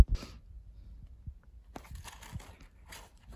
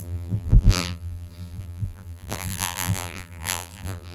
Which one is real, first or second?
first